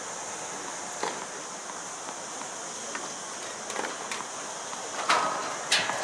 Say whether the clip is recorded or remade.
recorded